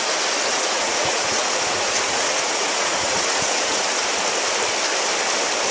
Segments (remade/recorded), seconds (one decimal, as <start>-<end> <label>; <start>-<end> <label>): 0.0-0.5 recorded; 0.5-3.9 remade; 3.9-5.7 recorded